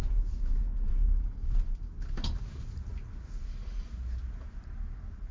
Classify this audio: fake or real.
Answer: real